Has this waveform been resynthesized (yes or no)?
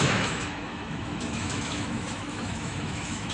yes